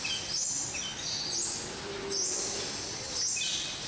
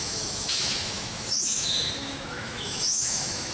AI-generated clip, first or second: second